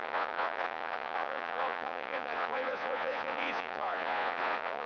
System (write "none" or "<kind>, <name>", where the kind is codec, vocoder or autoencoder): vocoder, Vocos